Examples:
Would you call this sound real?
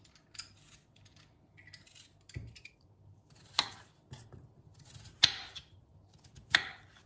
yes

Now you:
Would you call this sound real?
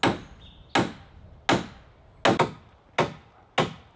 yes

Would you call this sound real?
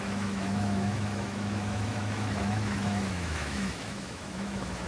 no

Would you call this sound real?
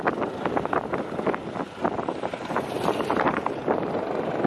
no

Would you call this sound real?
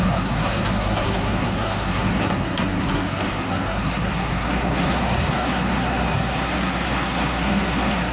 no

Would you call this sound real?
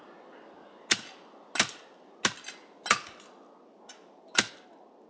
yes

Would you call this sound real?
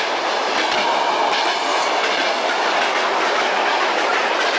yes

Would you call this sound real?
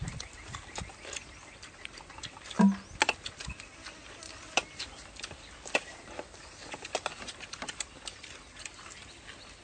yes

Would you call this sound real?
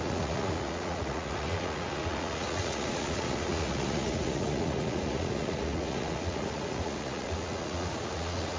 no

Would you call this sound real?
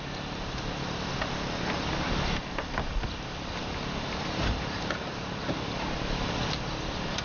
yes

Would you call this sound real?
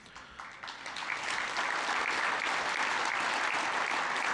yes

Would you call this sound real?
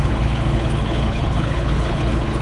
no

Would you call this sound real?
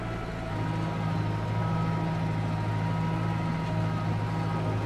yes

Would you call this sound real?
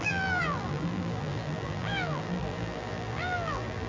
no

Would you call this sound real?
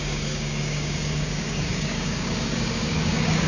no